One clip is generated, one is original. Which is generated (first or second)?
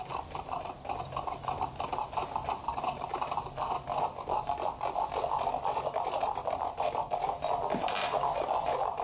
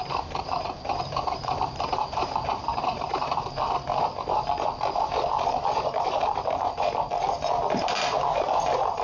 second